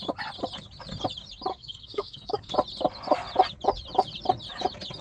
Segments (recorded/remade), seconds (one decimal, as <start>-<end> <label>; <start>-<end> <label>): 0.0-1.5 recorded; 1.5-2.5 remade; 2.5-5.0 recorded

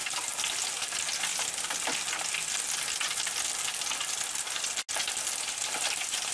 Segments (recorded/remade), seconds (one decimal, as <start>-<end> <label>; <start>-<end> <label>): 0.0-6.3 recorded

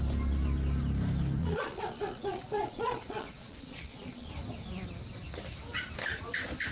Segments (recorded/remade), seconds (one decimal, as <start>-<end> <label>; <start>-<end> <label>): 0.0-1.4 recorded; 1.4-4.3 remade; 4.3-6.7 recorded

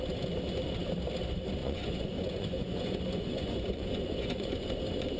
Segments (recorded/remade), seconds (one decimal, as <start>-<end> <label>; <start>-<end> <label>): 0.0-1.6 recorded; 1.6-4.7 remade; 4.7-5.2 recorded

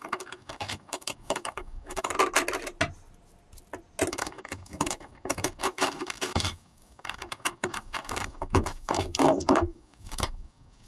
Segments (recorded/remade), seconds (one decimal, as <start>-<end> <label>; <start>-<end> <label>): 0.0-2.1 remade; 2.1-4.1 recorded; 4.1-10.9 remade